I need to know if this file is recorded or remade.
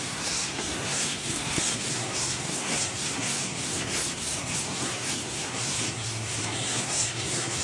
remade